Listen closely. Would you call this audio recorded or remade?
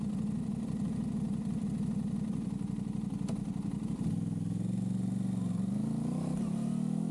recorded